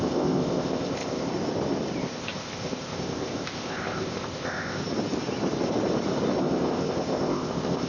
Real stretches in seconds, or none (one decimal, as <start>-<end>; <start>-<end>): 1.3-2.0; 4.8-6.4